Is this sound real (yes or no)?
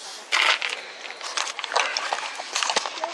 yes